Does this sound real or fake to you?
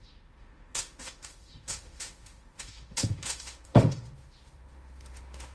fake